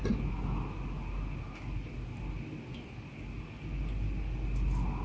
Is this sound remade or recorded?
recorded